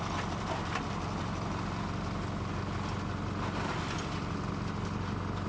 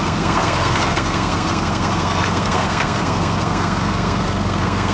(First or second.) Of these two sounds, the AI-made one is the second